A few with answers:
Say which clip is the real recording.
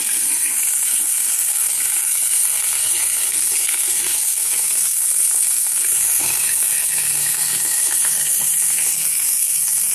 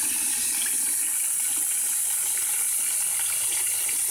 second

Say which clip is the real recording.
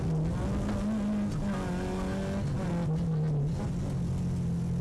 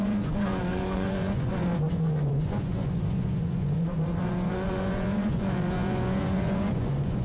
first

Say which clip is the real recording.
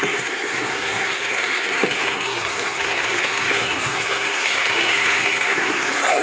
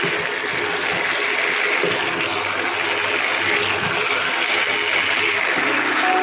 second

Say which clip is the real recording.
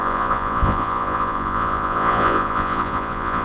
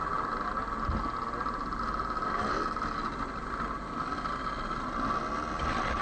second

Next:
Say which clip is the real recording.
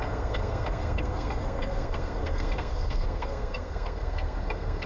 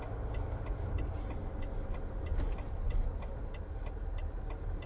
second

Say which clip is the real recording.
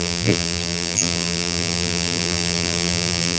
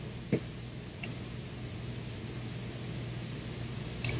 second